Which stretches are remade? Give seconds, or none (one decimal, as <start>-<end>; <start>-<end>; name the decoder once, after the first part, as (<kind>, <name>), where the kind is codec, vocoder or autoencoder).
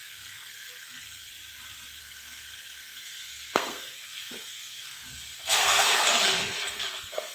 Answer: 0.0-1.3 (codec, SNAC); 2.0-7.3